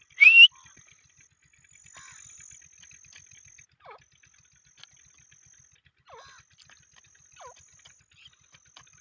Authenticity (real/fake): real